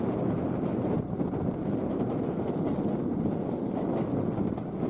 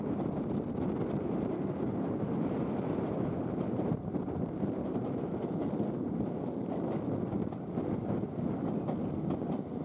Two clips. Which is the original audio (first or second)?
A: first